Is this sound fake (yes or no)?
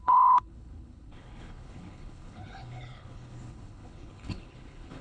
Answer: yes